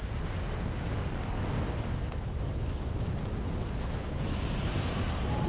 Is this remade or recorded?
recorded